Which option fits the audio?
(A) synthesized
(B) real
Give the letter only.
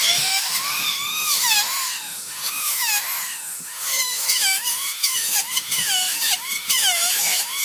A